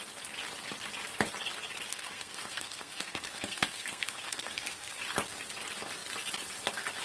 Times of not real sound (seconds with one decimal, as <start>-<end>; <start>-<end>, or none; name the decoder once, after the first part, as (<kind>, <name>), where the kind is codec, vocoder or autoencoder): 1.9-5.0 (codec, SNAC)